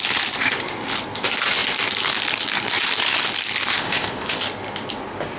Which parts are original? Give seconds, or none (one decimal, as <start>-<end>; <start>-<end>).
0.0-3.7; 4.4-5.4

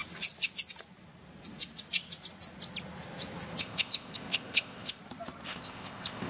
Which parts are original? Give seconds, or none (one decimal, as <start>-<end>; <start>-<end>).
0.0-3.6; 5.0-5.5

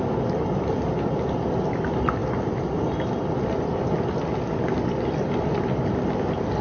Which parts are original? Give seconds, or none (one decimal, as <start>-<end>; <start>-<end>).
0.0-6.6

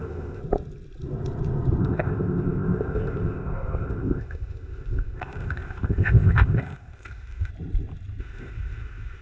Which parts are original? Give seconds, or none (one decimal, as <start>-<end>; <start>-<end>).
0.4-1.8; 7.5-8.2

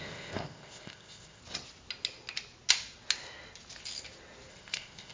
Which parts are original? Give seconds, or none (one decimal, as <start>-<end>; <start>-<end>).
1.4-4.5